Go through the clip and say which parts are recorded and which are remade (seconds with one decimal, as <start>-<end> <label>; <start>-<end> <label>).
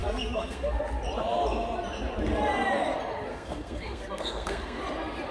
0.0-0.8 remade; 0.8-3.3 recorded; 3.3-4.8 remade; 4.8-5.3 recorded